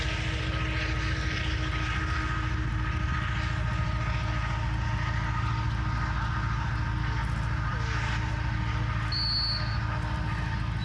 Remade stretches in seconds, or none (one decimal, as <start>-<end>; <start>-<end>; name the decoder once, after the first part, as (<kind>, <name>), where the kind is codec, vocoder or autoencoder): none